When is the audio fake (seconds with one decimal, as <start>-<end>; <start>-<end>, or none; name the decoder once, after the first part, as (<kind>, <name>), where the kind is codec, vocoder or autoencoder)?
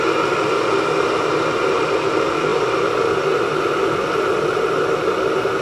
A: none